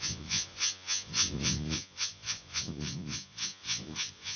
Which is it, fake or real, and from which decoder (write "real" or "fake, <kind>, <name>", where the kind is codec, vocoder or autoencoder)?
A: fake, vocoder, Vocos